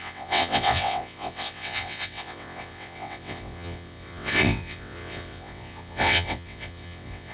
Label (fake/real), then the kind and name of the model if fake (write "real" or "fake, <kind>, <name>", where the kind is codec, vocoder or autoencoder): fake, vocoder, WaveNeXt